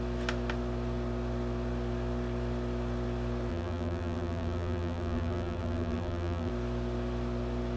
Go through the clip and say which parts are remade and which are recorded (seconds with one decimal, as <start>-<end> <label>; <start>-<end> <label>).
0.0-3.5 recorded; 3.5-6.5 remade; 6.5-7.8 recorded